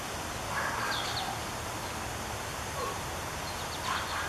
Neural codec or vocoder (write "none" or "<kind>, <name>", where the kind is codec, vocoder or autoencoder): none